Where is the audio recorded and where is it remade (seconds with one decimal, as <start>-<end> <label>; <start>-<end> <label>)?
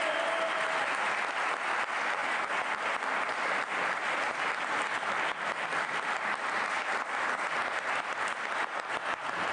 0.0-9.5 recorded